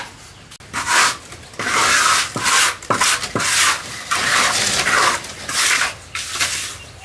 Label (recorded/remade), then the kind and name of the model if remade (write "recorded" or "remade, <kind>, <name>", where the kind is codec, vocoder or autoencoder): recorded